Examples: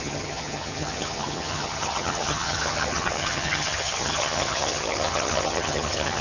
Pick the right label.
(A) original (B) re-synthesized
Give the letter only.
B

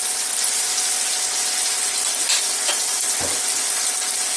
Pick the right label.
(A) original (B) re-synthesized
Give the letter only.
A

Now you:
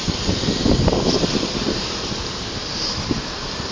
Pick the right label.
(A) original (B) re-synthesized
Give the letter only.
A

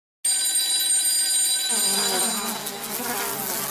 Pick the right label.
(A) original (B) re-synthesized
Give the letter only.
A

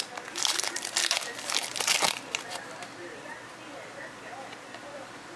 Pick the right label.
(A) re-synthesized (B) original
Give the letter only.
B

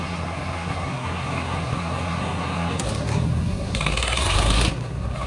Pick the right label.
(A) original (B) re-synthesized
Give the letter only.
B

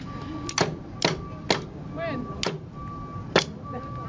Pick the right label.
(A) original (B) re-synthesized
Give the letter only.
A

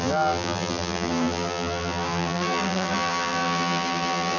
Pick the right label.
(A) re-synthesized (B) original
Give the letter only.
A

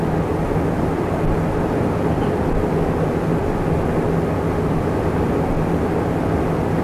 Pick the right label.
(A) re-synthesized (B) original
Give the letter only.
B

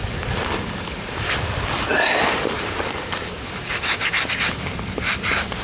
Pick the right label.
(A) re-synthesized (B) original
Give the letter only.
B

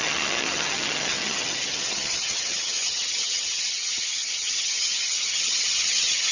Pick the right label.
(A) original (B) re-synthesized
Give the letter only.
B